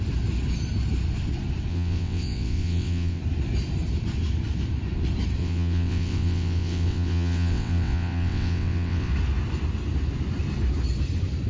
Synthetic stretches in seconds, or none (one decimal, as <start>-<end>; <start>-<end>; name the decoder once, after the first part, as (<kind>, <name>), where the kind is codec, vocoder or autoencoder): 1.7-3.2 (vocoder, WaveNeXt); 5.4-9.1

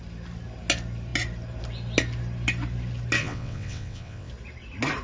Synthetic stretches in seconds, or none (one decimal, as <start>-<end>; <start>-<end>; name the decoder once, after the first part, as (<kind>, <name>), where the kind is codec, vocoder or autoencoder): 3.2-4.3 (vocoder, WaveNeXt)

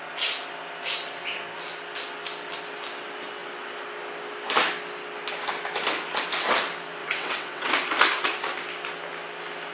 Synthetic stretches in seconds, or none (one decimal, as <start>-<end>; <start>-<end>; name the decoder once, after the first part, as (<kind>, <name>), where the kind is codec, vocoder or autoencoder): 7.0-7.7 (vocoder, WaveNeXt)